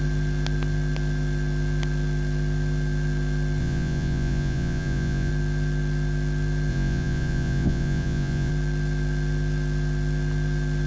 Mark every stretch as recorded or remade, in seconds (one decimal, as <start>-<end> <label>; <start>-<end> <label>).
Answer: 0.0-3.6 recorded; 3.6-5.3 remade; 5.3-6.7 recorded; 6.7-8.5 remade; 8.5-10.9 recorded